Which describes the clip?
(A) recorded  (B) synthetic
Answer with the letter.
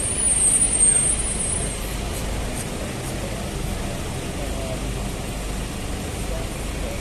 A